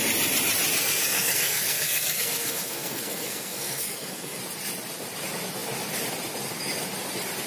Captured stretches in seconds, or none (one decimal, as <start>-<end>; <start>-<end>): 0.0-0.8; 4.4-7.5